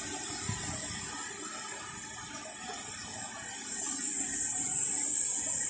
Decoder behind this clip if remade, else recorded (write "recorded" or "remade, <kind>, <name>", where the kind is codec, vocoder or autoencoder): recorded